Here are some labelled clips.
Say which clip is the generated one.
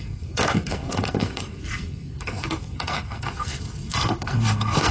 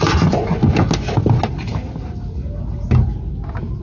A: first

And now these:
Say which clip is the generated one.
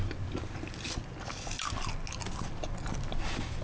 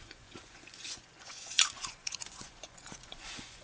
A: second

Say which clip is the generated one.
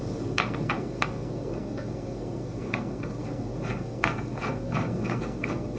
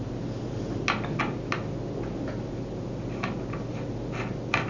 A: first